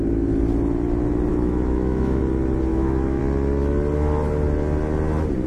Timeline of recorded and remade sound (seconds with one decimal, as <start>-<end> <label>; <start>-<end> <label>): 0.0-1.3 recorded; 1.3-2.2 remade; 2.2-2.7 recorded; 2.7-3.2 remade; 3.2-5.5 recorded